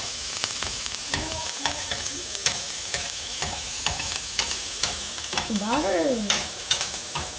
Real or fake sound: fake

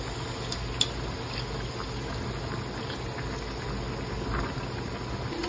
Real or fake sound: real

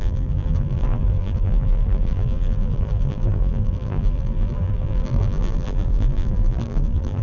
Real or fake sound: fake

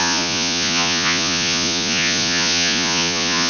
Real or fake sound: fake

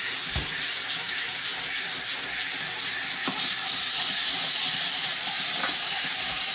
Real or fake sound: real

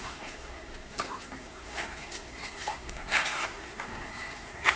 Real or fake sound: fake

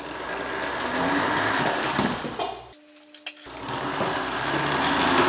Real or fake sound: real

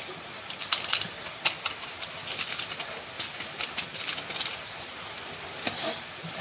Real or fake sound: real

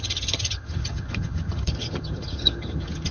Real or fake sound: fake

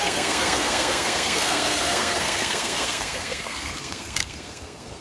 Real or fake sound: fake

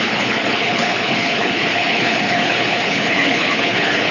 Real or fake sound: fake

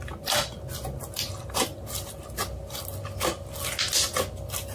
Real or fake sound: real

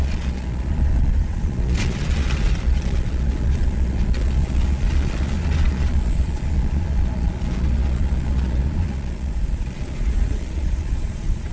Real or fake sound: fake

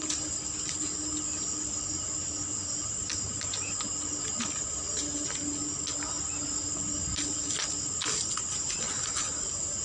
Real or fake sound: real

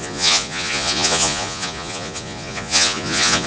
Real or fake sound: fake